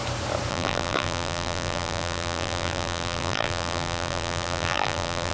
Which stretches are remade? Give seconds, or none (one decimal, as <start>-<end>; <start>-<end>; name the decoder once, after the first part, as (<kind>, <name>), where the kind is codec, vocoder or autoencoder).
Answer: 0.5-5.3 (vocoder, BigVGAN v2)